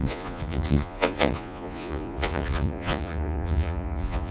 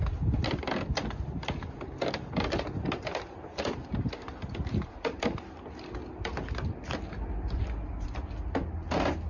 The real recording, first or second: second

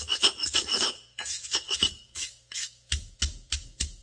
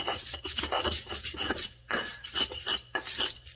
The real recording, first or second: second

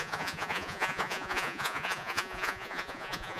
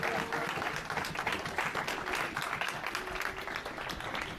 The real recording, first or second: second